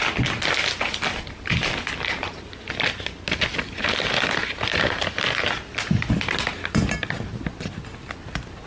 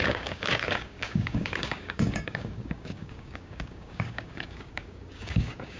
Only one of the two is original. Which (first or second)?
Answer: first